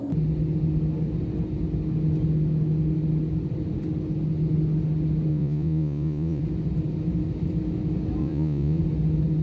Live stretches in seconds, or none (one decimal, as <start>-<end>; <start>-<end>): 0.0-5.3; 6.4-8.2; 8.8-9.4

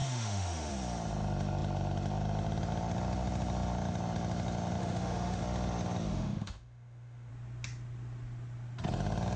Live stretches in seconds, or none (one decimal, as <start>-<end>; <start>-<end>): 0.7-4.8; 5.4-6.1; 7.3-9.4

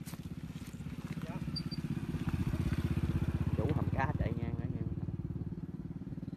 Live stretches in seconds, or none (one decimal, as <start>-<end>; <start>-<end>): 0.0-6.4